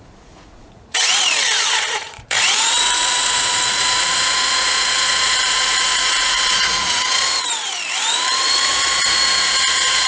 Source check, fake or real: fake